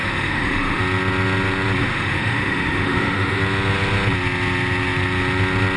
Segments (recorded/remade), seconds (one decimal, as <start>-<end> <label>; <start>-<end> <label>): 0.0-0.8 remade; 0.8-1.8 recorded; 1.8-3.4 remade; 3.4-5.8 recorded